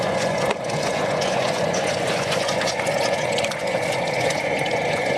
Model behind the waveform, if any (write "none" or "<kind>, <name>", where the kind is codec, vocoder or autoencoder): vocoder, Vocos